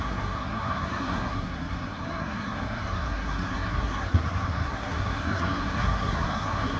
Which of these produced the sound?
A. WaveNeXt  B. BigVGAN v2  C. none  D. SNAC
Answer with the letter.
D